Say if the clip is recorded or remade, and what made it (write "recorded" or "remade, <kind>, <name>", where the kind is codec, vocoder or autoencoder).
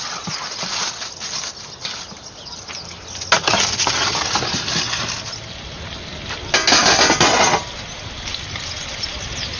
recorded